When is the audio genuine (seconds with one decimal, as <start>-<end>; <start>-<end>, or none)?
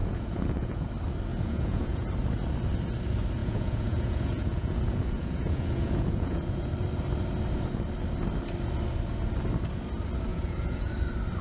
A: 0.9-1.3; 2.1-3.4; 6.7-10.3; 10.9-11.4